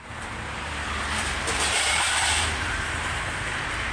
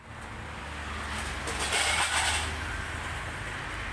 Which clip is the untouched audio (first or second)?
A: second